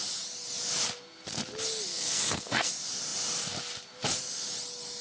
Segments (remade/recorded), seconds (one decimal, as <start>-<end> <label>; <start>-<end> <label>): 0.0-1.9 recorded; 1.9-2.7 remade; 2.7-5.0 recorded